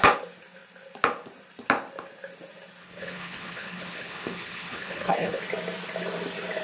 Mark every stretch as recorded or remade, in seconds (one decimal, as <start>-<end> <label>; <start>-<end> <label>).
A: 0.0-2.8 recorded; 2.8-5.4 remade; 5.4-6.6 recorded